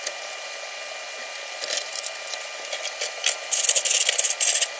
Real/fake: real